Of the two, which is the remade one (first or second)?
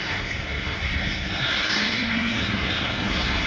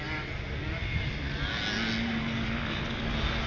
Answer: first